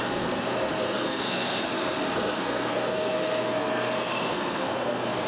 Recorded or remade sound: remade